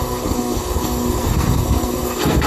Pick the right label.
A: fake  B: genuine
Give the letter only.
A